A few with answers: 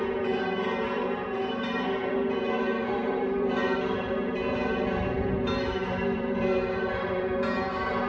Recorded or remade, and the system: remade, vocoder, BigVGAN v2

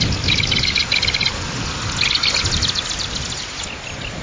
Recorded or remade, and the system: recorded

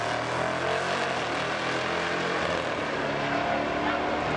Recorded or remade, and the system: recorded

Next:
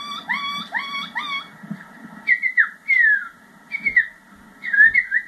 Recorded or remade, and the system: recorded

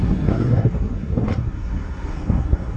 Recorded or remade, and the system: remade, codec, SNAC